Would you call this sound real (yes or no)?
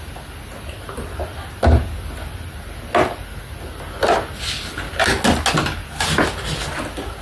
yes